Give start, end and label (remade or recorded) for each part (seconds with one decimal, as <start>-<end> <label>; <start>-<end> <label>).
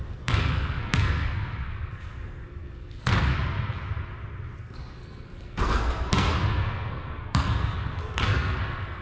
0.0-3.3 remade; 3.3-4.6 recorded; 4.6-9.0 remade